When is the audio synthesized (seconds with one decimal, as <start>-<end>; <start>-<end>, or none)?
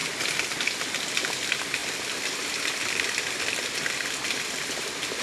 0.6-5.2